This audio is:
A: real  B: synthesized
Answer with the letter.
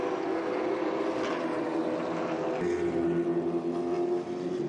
A